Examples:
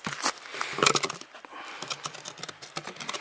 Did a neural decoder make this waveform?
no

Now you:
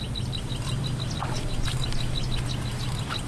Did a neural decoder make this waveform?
no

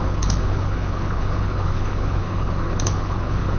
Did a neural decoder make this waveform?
yes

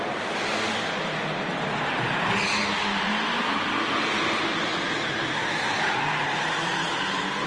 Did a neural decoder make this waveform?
no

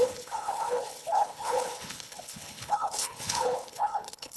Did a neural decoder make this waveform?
yes